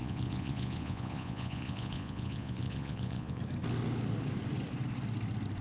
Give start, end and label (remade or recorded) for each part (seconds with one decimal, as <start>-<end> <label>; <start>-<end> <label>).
0.0-3.4 remade; 3.4-5.6 recorded